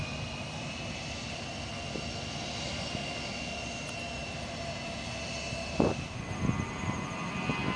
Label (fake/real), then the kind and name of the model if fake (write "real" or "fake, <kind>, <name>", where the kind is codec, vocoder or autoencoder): real